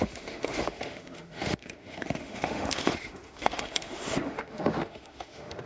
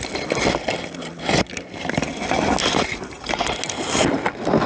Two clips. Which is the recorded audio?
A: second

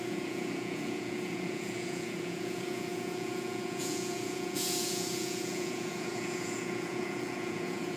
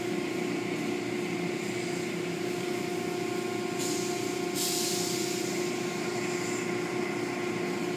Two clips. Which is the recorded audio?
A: second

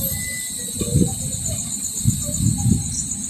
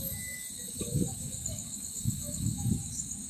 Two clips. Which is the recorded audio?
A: first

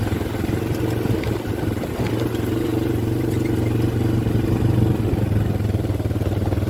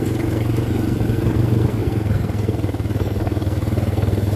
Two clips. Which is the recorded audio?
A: first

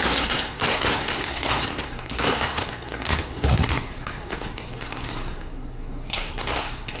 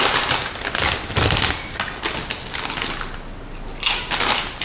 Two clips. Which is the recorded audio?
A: second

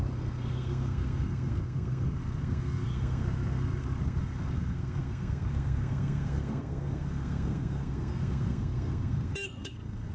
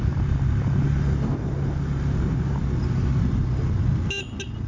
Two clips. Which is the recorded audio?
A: second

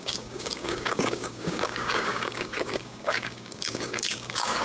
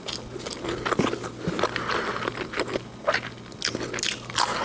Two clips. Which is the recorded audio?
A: second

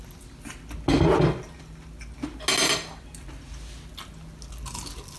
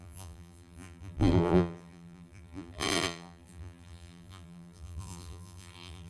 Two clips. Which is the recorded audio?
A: first